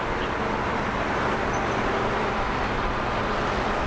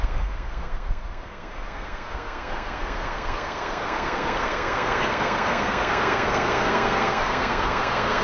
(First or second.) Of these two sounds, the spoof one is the second